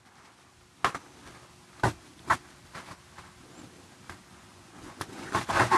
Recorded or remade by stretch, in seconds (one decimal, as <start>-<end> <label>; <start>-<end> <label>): 0.0-4.3 recorded; 4.3-5.8 remade